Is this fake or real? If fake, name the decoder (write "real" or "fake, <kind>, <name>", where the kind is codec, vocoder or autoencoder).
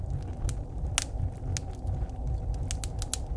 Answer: real